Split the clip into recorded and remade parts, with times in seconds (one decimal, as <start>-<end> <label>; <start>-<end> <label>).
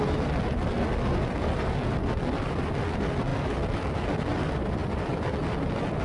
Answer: 0.0-6.0 recorded